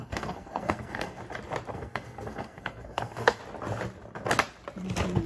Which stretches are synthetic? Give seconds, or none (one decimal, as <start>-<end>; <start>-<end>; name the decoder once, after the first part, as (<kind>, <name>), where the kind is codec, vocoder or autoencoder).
0.0-1.2 (codec, SNAC); 1.7-3.4

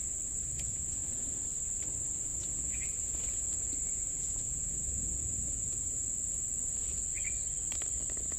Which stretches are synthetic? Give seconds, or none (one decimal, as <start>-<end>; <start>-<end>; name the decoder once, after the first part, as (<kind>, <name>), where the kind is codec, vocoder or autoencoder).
2.3-6.0 (vocoder, Vocos)

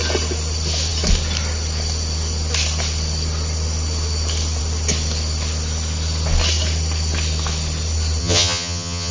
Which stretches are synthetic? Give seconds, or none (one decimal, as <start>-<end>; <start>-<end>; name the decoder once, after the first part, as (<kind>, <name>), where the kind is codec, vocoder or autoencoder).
8.2-9.1 (vocoder, HiFi-GAN)

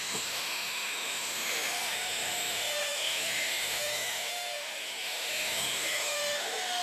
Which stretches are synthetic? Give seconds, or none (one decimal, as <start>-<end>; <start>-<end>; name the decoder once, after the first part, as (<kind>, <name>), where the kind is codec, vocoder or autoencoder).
0.0-6.8 (autoencoder, DAC-VAE)

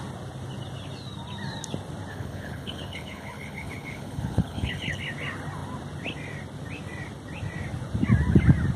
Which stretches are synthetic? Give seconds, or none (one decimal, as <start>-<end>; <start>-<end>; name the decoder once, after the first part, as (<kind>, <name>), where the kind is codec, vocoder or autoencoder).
2.1-5.0 (codec, HILCodec)

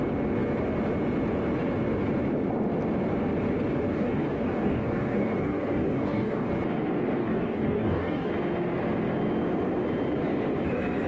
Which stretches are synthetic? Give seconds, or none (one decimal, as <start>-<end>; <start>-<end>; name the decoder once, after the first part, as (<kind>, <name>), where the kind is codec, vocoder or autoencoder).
3.9-6.5 (codec, DAC); 7.2-8.3

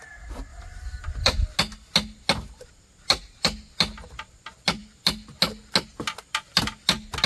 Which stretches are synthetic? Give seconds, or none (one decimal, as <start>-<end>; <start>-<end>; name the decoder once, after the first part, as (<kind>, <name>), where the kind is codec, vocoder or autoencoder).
none